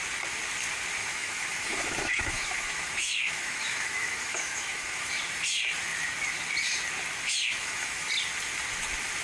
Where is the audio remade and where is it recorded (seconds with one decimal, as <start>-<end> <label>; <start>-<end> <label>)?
0.0-1.0 recorded; 1.0-5.1 remade; 5.1-7.6 recorded; 7.6-8.1 remade; 8.1-9.2 recorded